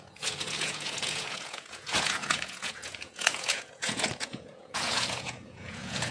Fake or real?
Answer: fake